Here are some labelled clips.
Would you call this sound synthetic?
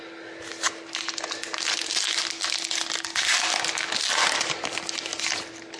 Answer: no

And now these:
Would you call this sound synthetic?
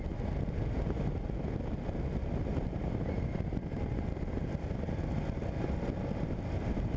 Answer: no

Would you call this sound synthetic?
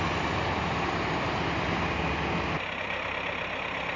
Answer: no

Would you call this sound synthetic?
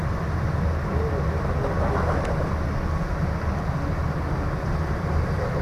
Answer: no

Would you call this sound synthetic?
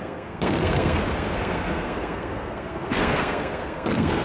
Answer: yes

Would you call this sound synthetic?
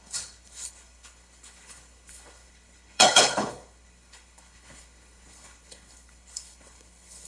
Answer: yes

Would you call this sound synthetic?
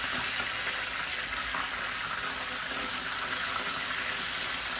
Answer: no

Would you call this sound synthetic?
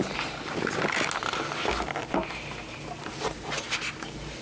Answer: no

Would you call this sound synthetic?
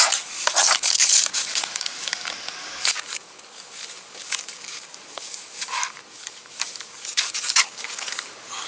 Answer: yes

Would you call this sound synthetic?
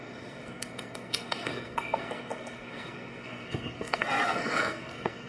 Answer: yes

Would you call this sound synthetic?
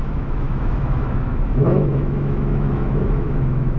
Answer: yes